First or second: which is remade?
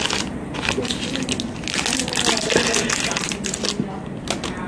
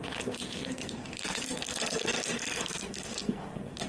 second